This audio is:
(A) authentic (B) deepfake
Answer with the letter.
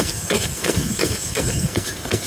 B